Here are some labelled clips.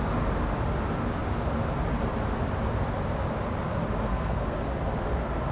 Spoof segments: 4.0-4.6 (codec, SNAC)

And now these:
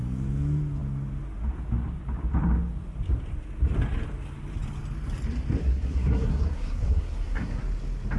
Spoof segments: 5.6-7.6 (codec, SNAC)

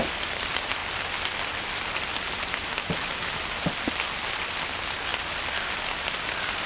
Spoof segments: none